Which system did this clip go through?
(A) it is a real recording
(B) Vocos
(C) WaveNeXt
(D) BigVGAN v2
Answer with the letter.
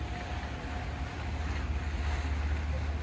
A